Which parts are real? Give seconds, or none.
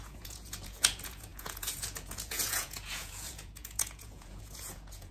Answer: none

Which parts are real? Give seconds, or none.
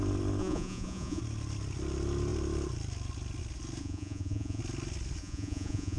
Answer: 0.0-0.4; 1.2-3.8; 4.6-5.2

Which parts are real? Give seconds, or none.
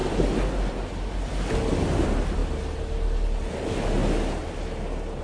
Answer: 0.0-5.2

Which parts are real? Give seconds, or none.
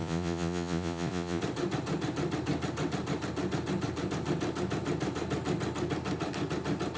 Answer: 1.4-7.0